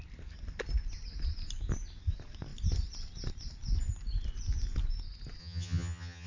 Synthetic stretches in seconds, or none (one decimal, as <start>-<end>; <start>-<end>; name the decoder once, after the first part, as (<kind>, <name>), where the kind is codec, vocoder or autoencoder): 5.4-6.3 (vocoder, HiFi-GAN)